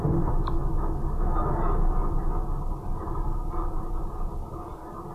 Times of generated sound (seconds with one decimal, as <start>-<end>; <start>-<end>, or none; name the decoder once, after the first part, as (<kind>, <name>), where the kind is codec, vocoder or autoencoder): none